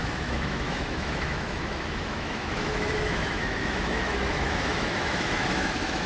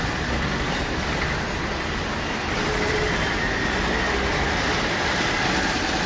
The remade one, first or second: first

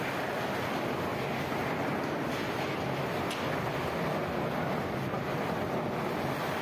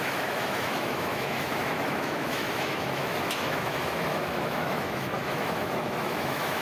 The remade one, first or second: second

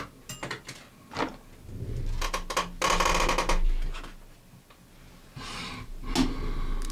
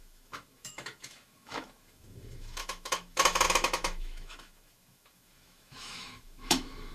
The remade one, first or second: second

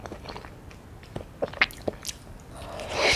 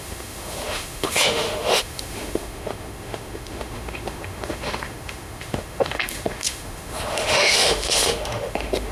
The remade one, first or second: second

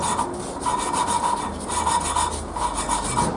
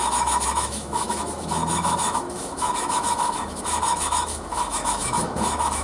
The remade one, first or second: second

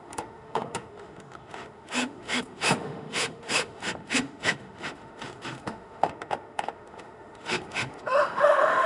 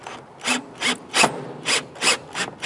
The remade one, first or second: first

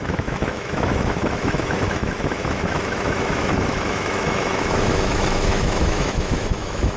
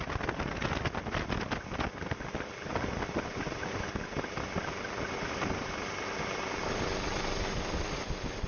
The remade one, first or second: first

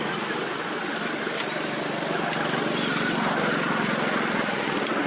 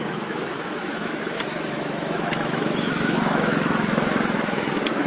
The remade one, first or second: second